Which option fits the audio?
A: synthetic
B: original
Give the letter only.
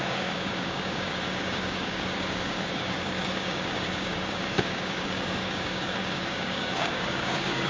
A